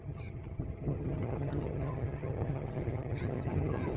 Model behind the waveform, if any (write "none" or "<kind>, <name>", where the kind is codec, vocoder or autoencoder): vocoder, HiFi-GAN